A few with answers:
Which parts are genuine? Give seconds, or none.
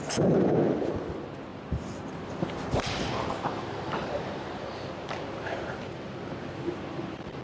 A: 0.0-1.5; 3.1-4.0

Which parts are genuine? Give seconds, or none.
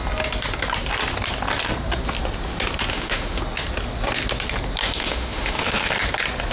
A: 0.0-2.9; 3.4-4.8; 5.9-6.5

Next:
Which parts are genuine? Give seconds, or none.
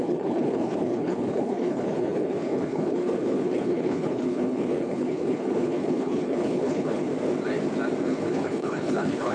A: 7.1-8.0